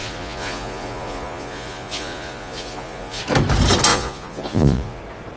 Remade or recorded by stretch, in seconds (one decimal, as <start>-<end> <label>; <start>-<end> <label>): 0.0-3.2 remade; 3.2-3.9 recorded; 3.9-5.0 remade; 5.0-5.4 recorded